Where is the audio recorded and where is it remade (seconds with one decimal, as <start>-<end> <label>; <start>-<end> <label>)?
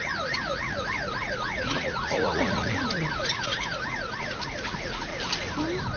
0.0-5.1 remade; 5.1-6.0 recorded